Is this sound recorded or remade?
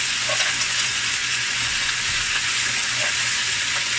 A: remade